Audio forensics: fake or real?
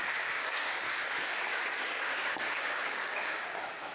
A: fake